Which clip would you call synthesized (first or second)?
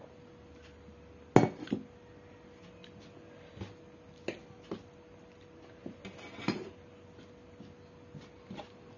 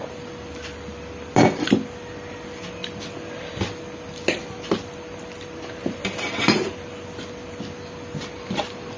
second